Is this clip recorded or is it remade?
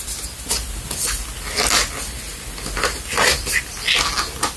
recorded